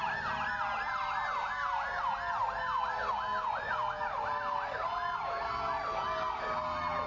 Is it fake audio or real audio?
real